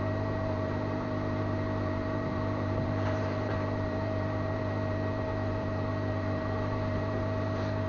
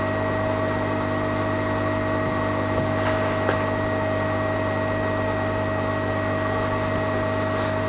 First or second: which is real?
second